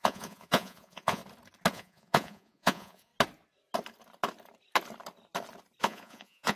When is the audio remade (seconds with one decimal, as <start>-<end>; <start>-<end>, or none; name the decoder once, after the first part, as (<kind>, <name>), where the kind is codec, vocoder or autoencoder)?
0.0-1.2 (vocoder, Vocos); 1.7-3.1; 5.8-6.5